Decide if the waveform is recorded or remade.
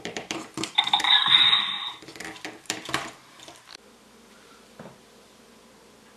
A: remade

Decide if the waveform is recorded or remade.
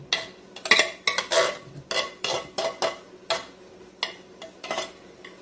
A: recorded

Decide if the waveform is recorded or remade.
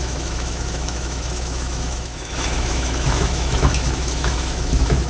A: remade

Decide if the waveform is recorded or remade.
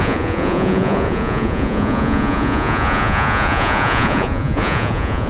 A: remade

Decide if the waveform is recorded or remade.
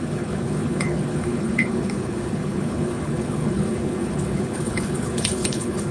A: remade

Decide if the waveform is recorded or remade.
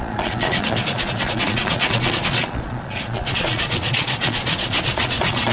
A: remade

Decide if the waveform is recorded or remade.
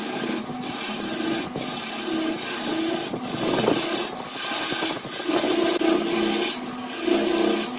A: recorded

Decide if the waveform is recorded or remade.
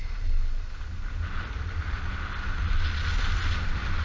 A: recorded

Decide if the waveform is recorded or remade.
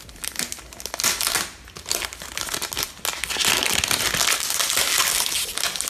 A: recorded